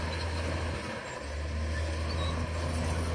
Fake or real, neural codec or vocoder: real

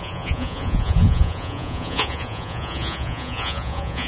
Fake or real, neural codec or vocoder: fake, vocoder, Vocos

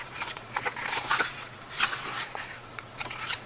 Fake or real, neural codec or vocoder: fake, vocoder, Vocos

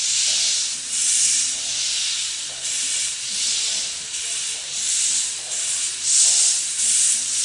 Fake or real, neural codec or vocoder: real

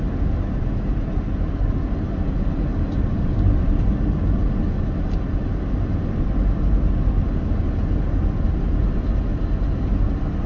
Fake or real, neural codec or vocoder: real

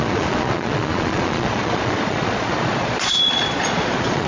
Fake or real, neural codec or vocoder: fake, vocoder, Vocos